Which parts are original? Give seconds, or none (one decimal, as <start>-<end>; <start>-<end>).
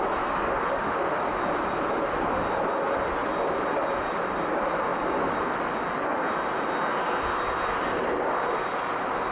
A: 0.0-0.5; 1.3-9.3